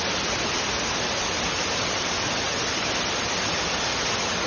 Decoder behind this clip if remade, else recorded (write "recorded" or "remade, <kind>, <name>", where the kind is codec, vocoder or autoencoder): recorded